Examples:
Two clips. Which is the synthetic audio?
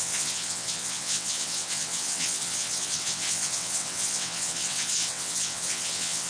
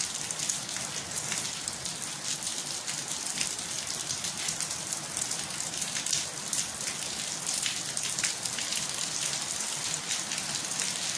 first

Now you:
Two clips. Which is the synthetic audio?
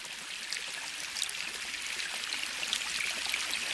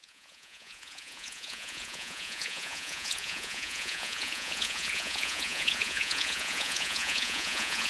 second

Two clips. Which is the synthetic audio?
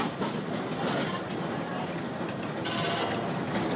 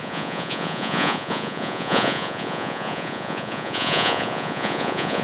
second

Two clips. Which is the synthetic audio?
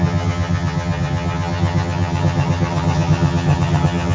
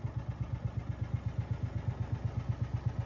first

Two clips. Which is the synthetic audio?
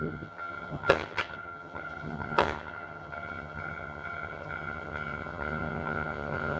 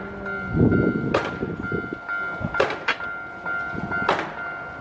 first